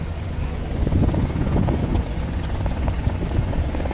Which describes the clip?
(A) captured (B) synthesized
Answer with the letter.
B